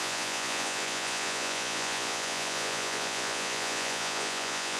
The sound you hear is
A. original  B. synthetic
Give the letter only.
B